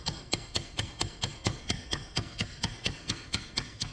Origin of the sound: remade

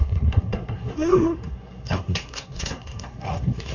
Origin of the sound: remade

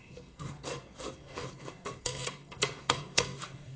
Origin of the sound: remade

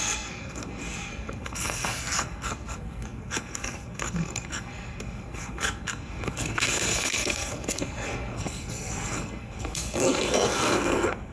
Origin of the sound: remade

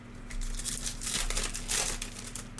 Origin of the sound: recorded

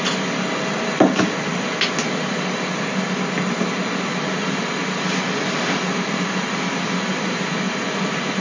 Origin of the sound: recorded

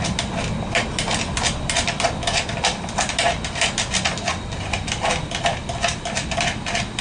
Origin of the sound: recorded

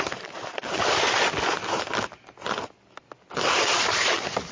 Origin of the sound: recorded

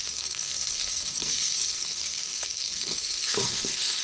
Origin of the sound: remade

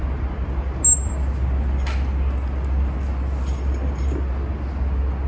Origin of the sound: recorded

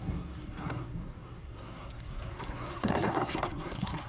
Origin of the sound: remade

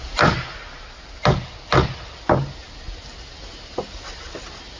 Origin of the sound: recorded